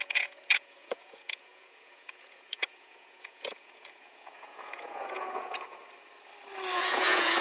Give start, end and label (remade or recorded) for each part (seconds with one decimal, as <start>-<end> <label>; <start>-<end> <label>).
0.0-5.8 remade; 5.8-6.7 recorded; 6.7-7.4 remade